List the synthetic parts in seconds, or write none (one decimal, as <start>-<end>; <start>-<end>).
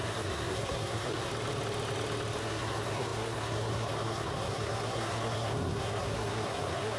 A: 0.0-1.3; 2.4-7.0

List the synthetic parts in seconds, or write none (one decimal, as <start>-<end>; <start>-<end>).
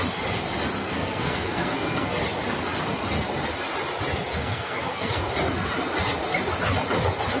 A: 0.8-2.2; 4.4-5.3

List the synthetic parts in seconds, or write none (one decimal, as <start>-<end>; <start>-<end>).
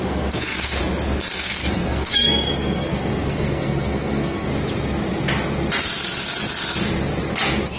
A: 0.0-0.8; 1.3-4.5